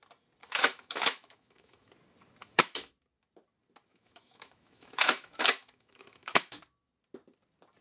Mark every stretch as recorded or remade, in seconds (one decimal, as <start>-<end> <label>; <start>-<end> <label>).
0.0-0.4 recorded; 0.4-1.9 remade; 1.9-2.4 recorded; 2.4-2.9 remade; 2.9-3.9 recorded; 3.9-6.6 remade; 6.6-7.8 recorded